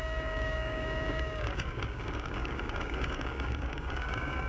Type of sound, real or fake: fake